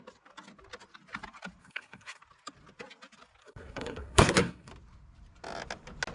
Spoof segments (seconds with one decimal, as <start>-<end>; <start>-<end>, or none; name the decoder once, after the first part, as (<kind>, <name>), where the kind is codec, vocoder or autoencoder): 1.6-2.2 (codec, SNAC); 3.4-4.7